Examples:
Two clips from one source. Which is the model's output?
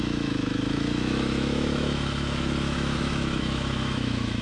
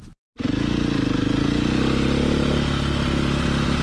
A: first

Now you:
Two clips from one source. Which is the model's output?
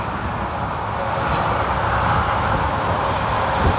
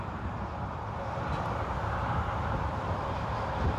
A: second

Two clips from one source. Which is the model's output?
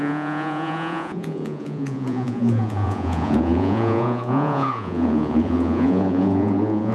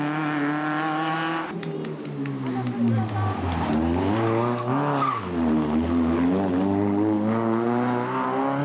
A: first